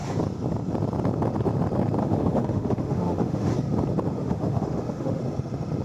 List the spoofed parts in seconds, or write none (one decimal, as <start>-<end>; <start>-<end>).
2.0-3.5; 4.2-5.2